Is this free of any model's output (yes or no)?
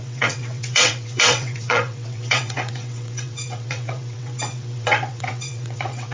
no